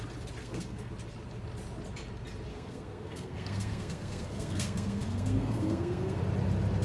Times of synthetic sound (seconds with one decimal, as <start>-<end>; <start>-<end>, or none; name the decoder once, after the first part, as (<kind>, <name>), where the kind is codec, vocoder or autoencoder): 0.4-0.9 (codec, SNAC); 2.5-6.2